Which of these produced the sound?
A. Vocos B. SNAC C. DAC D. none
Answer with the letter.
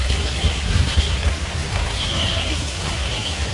B